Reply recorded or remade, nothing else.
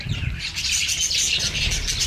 recorded